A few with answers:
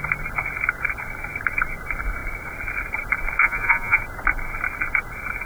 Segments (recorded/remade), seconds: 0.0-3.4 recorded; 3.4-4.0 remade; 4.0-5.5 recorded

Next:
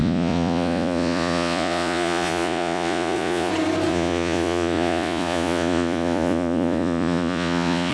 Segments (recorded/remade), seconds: 0.0-3.5 remade; 3.5-3.9 recorded; 3.9-7.9 remade

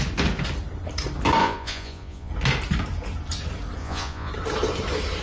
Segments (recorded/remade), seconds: 0.0-1.4 recorded; 1.4-2.3 remade; 2.3-3.8 recorded; 3.8-4.3 remade; 4.3-5.2 recorded

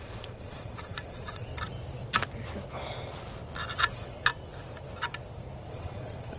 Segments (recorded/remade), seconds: 0.0-1.5 remade; 1.5-3.9 recorded; 3.9-4.3 remade; 4.3-5.7 recorded; 5.7-6.4 remade

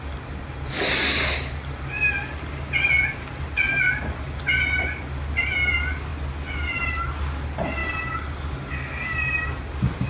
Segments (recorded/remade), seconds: 0.0-10.1 recorded